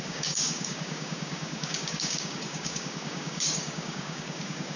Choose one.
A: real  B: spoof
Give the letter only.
B